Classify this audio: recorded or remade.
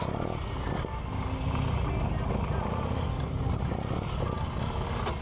recorded